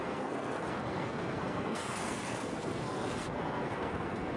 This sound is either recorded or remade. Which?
remade